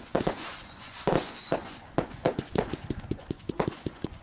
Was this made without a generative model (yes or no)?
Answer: no